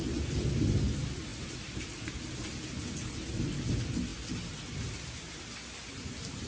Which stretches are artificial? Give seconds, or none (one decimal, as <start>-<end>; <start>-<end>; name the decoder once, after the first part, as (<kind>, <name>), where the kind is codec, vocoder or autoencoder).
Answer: none

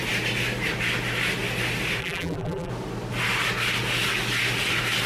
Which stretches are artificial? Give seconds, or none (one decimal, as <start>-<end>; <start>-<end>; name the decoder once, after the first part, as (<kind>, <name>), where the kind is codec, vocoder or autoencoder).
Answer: 2.0-2.7 (vocoder, BigVGAN v2)

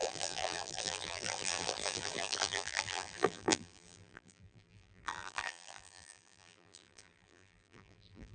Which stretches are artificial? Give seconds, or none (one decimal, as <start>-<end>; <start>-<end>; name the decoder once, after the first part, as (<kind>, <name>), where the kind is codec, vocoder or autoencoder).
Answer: 0.0-8.3 (vocoder, BigVGAN v2)